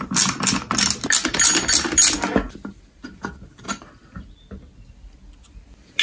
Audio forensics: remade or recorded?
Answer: recorded